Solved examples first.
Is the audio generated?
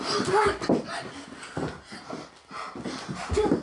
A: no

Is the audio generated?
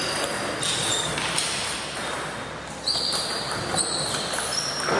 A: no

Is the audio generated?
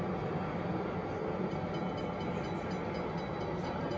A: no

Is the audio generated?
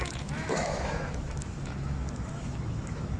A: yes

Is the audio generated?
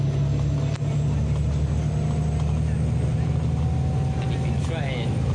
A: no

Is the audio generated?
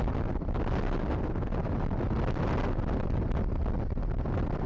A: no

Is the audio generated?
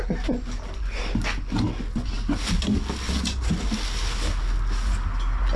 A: no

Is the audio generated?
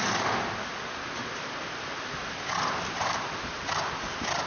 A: no